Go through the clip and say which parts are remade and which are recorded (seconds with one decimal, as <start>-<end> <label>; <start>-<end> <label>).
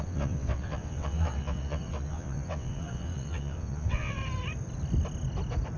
0.0-4.2 remade; 4.2-5.8 recorded